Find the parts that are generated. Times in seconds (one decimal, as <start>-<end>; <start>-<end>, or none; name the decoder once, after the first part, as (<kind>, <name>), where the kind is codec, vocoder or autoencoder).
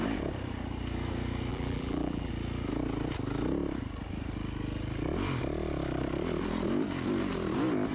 1.5-2.3 (vocoder, BigVGAN v2)